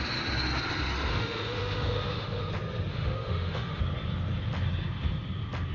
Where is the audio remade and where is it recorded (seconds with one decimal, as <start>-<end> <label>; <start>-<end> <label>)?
0.0-1.1 recorded; 1.1-2.5 remade; 2.5-2.9 recorded; 2.9-3.8 remade; 3.8-5.7 recorded